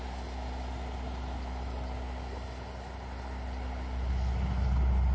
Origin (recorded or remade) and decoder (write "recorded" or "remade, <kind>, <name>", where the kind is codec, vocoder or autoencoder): recorded